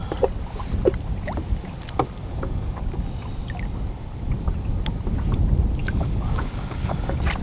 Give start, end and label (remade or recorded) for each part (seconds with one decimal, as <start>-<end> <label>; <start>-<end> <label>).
0.0-2.2 recorded; 2.2-2.8 remade; 2.8-5.8 recorded; 5.8-7.0 remade; 7.0-7.4 recorded